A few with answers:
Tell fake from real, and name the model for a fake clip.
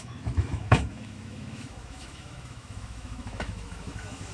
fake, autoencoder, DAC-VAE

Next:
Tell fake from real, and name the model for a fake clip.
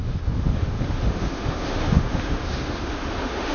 fake, autoencoder, DAC-VAE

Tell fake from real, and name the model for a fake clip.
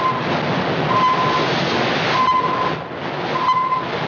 real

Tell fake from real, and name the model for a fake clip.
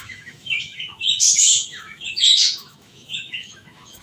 fake, autoencoder, DAC-VAE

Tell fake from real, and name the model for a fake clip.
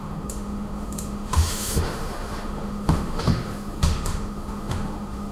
fake, autoencoder, DAC-VAE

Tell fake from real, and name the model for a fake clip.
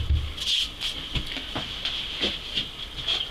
real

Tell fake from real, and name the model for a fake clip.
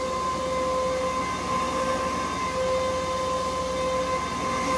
real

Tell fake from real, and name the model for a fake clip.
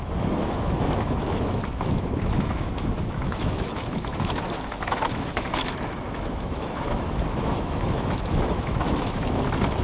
fake, autoencoder, DAC-VAE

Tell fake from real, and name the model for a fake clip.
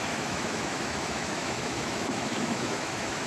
fake, autoencoder, DAC-VAE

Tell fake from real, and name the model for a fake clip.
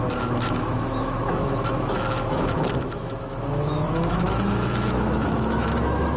fake, autoencoder, DAC-VAE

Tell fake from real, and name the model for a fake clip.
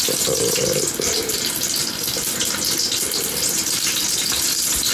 real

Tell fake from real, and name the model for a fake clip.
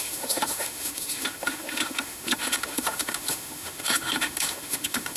fake, autoencoder, DAC-VAE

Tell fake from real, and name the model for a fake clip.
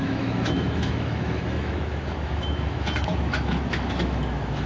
fake, autoencoder, DAC-VAE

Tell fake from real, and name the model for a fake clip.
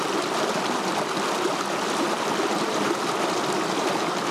real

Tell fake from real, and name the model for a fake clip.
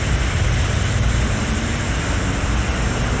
real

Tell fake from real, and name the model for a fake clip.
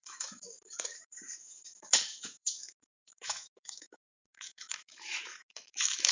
fake, autoencoder, DAC-VAE